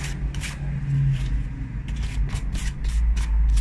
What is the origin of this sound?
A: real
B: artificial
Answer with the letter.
A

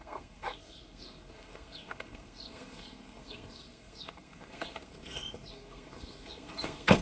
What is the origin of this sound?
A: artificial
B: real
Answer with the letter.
A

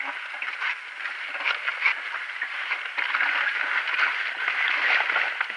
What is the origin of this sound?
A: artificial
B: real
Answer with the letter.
B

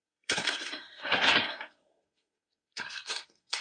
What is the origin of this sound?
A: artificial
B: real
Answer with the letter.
A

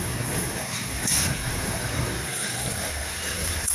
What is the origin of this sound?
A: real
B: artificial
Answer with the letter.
B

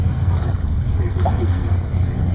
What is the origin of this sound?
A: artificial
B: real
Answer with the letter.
A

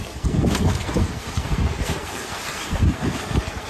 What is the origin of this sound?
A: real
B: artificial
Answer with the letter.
B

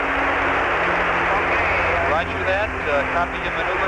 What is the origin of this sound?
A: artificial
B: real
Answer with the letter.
B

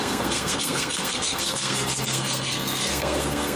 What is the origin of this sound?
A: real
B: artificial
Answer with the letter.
B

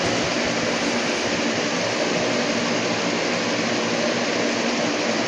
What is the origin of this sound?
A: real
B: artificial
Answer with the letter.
A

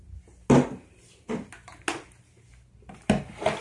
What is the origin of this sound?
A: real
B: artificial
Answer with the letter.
A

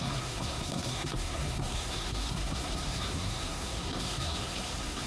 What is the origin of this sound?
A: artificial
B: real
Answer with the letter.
A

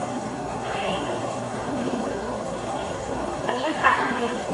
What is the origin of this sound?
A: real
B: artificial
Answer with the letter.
B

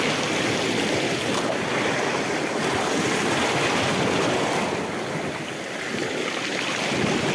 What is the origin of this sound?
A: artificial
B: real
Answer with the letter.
B